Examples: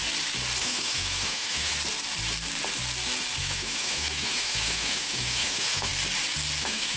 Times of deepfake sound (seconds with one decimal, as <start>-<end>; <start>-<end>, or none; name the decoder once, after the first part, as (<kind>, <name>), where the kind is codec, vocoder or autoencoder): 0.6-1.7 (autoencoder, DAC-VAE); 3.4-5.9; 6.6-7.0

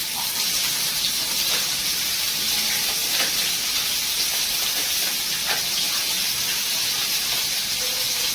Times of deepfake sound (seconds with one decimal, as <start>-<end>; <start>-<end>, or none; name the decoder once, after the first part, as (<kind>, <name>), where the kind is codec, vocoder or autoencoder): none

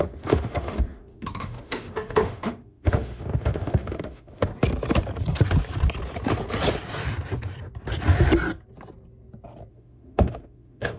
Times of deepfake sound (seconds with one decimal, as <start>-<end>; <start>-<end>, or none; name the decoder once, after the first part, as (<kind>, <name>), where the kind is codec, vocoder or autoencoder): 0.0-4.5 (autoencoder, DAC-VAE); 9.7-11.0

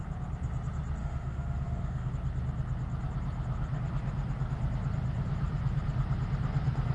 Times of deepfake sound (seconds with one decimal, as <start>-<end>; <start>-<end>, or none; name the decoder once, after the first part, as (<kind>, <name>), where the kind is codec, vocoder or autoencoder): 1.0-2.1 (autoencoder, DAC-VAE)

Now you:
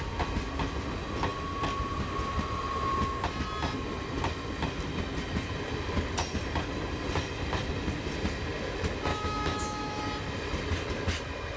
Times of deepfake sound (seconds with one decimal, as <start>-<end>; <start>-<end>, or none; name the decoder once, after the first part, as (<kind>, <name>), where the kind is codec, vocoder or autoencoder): 9.1-10.0 (autoencoder, DAC-VAE)

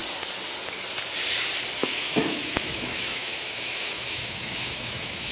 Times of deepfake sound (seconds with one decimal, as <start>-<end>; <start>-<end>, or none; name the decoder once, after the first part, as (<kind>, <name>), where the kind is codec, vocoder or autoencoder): 1.8-5.3 (autoencoder, DAC-VAE)